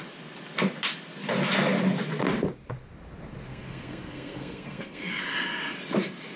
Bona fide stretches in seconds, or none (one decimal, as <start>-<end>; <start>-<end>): 0.0-3.5; 5.2-6.4